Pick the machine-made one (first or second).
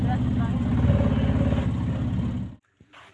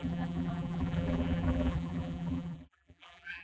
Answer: second